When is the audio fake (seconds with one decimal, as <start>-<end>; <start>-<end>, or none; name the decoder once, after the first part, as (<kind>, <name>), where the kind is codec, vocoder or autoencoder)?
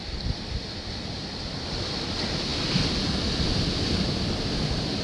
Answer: none